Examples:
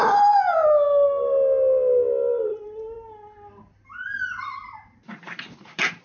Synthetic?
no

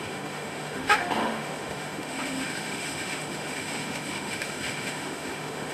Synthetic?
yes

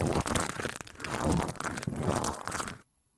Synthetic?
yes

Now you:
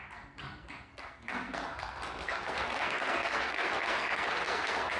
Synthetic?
yes